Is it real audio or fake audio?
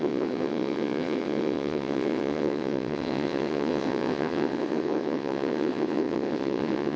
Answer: fake